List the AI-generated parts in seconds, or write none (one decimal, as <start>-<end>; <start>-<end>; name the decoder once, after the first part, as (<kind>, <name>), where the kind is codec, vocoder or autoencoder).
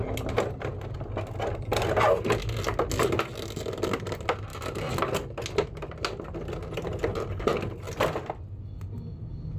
none